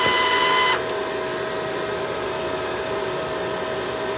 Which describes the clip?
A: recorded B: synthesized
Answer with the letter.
A